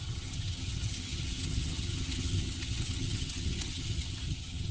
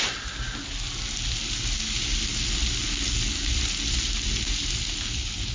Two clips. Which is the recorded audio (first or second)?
second